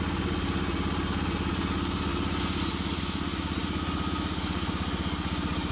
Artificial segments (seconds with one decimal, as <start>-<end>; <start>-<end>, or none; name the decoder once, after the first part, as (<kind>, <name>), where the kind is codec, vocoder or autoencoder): none